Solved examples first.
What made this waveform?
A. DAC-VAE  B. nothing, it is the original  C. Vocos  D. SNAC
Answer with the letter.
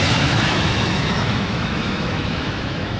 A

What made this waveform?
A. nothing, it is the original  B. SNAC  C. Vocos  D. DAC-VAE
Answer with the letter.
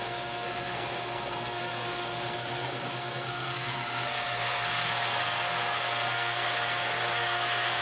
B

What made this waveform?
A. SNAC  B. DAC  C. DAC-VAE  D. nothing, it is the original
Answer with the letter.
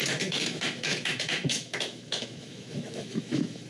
C